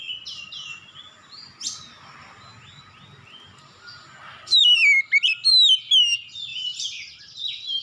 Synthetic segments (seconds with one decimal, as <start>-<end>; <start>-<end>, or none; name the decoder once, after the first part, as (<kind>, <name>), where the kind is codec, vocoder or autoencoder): none